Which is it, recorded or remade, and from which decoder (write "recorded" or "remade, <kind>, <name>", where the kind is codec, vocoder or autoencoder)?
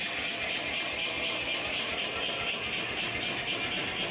recorded